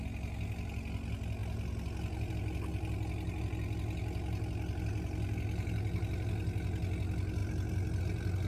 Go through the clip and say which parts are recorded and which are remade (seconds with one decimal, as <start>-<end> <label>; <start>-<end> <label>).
0.0-8.5 recorded